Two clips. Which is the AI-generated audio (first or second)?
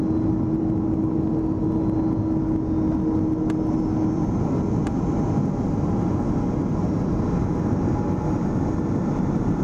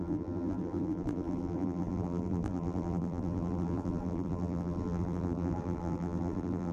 second